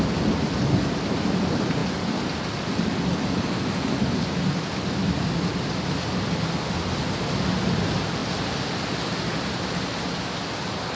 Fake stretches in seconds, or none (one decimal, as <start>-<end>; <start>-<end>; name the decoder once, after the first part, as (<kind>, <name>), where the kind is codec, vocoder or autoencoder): none